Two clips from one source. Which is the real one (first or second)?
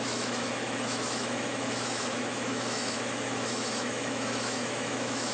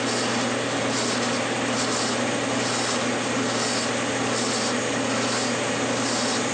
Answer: second